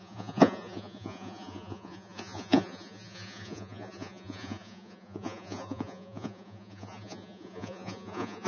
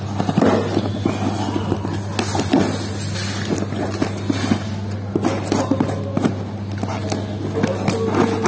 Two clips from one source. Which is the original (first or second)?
second